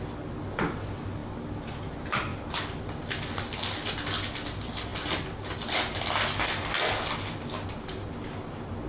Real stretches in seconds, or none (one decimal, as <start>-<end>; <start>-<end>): 0.0-8.9